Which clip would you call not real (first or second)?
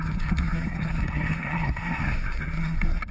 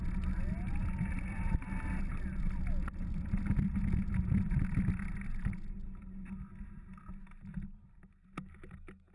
first